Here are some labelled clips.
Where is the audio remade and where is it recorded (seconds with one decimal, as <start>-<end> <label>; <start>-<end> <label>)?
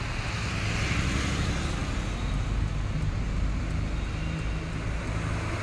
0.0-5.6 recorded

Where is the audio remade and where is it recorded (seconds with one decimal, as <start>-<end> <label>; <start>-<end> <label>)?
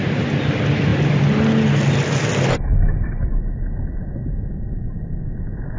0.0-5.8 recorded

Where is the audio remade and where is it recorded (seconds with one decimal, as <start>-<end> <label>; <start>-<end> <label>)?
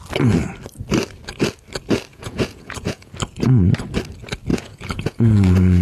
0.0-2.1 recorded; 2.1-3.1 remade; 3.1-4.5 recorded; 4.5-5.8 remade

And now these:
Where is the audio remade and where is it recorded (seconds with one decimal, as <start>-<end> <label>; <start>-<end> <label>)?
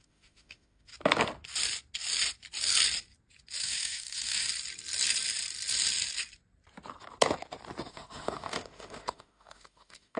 0.0-0.9 remade; 0.9-3.6 recorded; 3.6-4.5 remade; 4.5-7.9 recorded; 7.9-10.2 remade